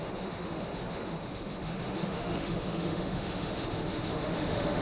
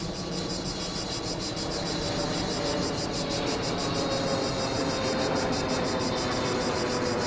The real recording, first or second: second